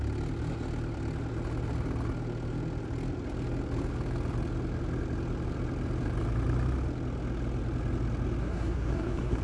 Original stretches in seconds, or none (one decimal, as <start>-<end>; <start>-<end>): 0.0-8.4